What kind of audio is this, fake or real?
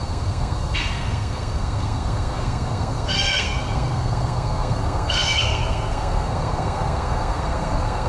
fake